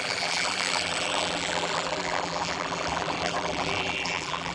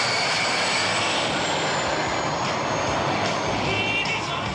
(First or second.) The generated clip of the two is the first